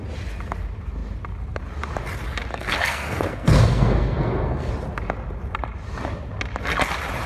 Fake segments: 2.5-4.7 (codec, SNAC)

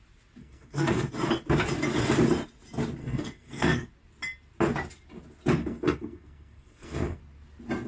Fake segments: 0.4-1.1 (codec, SNAC); 3.0-3.9; 5.6-7.2

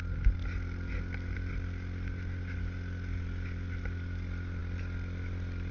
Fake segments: none

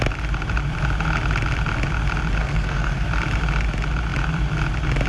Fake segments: 2.4-3.1 (codec, SNAC)